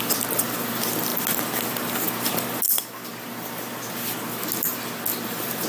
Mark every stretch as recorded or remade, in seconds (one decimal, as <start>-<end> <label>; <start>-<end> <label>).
0.0-5.7 recorded

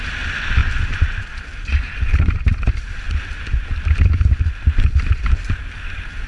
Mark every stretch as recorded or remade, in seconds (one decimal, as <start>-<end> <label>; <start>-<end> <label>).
0.0-0.6 recorded; 0.6-2.7 remade; 2.7-6.3 recorded